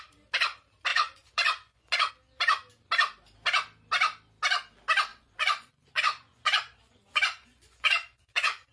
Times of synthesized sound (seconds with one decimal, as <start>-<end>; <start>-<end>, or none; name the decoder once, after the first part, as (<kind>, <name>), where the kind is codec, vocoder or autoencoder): 0.9-2.1 (vocoder, Vocos); 5.1-8.7